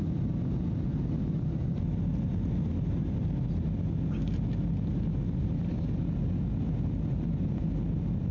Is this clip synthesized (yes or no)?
no